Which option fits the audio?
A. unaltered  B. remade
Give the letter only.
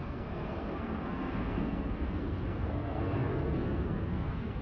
B